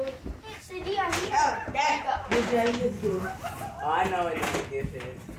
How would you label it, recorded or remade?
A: recorded